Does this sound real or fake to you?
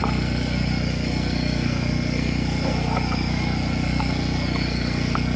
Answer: fake